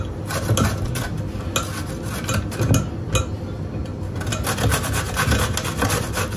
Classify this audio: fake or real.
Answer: real